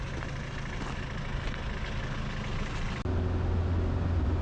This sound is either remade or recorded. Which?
recorded